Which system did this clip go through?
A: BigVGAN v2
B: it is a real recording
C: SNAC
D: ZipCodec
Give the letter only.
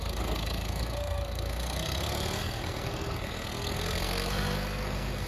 C